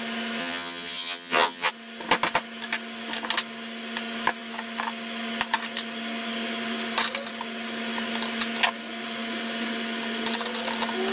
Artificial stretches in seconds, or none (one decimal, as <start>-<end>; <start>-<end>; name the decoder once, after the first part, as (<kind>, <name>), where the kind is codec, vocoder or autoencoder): 0.4-1.7 (vocoder, HiFi-GAN)